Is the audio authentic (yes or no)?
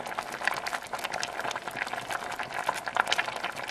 yes